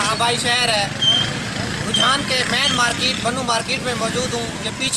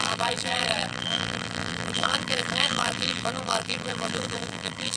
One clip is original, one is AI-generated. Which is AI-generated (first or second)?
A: second